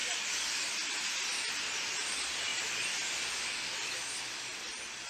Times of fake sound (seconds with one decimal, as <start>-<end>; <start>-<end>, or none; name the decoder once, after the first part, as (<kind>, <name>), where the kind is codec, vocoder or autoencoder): none